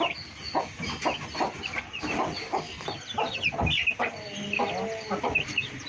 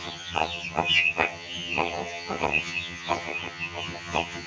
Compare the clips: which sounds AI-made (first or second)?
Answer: second